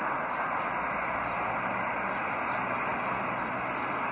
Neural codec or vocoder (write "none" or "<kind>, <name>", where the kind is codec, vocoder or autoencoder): none